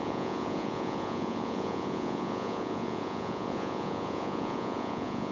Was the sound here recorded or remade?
remade